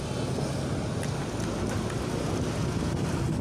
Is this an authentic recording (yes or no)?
yes